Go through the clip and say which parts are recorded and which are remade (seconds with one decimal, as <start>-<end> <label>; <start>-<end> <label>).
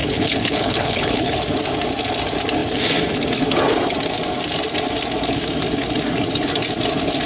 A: 0.0-1.4 remade; 1.4-7.3 recorded